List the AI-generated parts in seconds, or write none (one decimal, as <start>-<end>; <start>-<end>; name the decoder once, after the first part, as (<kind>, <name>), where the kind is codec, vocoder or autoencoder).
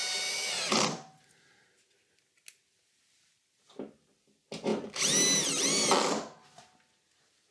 none